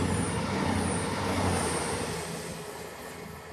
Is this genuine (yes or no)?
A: yes